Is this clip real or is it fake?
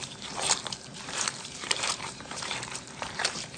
fake